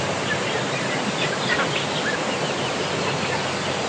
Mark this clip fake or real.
real